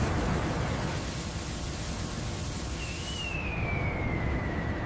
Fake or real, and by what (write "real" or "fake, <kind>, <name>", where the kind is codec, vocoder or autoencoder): real